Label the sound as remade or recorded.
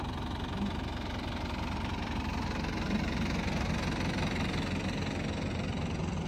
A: recorded